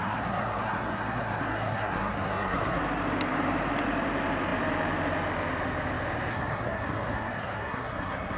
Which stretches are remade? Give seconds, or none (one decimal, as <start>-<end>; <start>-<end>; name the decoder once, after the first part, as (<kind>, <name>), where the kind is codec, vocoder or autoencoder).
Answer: 0.0-2.8 (codec, SNAC); 6.3-8.4